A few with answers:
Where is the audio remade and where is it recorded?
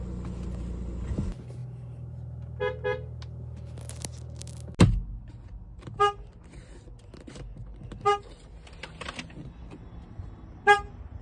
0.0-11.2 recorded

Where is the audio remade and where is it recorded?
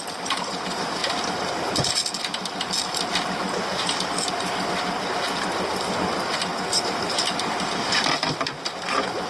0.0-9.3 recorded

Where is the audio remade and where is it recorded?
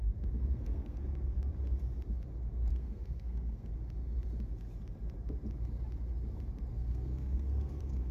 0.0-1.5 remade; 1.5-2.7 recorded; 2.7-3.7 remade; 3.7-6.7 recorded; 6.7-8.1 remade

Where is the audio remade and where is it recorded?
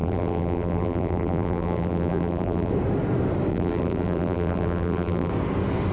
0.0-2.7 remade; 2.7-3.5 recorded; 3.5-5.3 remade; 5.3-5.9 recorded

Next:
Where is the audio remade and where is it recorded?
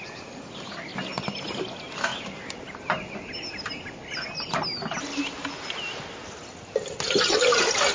0.0-7.9 recorded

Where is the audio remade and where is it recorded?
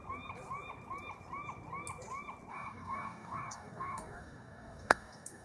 0.0-2.5 recorded; 2.5-5.4 remade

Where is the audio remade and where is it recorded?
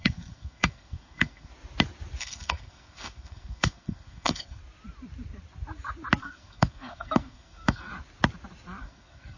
0.0-1.5 remade; 1.5-2.2 recorded; 2.2-4.6 remade; 4.6-6.2 recorded; 6.2-7.9 remade; 7.9-8.8 recorded; 8.8-9.4 remade